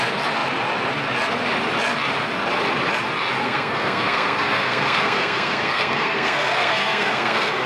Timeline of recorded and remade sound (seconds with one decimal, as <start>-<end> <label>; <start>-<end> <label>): 0.0-3.4 recorded; 3.4-7.7 remade